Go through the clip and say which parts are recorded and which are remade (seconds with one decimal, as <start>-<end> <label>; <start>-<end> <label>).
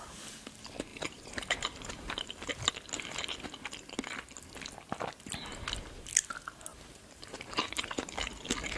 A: 0.0-0.9 recorded; 0.9-2.7 remade; 2.7-6.7 recorded; 6.7-8.2 remade; 8.2-8.8 recorded